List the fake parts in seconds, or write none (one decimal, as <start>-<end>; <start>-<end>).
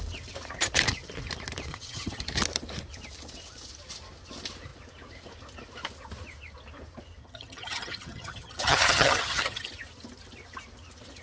1.7-2.2; 7.2-9.7